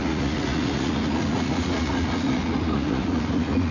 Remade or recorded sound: remade